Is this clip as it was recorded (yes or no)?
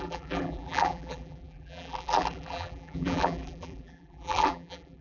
no